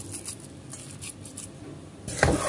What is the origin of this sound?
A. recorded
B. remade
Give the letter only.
A